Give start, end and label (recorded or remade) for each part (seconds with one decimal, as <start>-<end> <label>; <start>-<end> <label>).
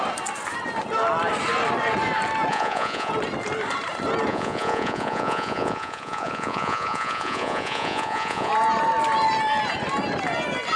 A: 0.0-2.5 recorded; 2.5-3.1 remade; 3.1-4.3 recorded; 4.3-8.5 remade; 8.5-10.8 recorded